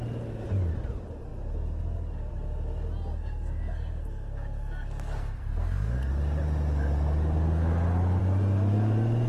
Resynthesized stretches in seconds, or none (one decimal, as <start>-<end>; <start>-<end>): 3.1-6.1